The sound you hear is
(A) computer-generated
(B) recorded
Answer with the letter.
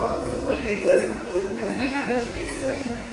A